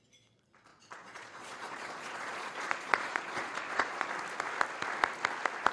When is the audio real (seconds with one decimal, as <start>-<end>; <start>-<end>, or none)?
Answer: 0.0-0.7; 4.1-5.7

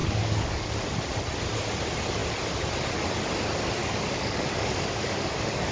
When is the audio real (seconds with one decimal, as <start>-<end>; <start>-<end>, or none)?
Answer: 0.8-3.8